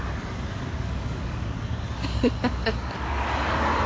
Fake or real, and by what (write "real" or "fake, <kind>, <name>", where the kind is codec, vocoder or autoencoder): fake, codec, DAC